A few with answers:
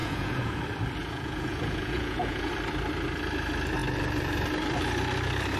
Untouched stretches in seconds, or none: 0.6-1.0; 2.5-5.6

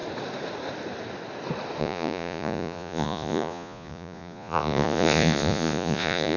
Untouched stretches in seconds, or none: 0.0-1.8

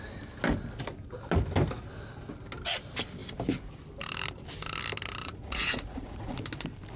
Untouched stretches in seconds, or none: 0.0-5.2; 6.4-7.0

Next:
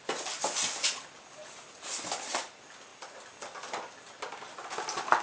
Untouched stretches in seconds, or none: 0.0-5.2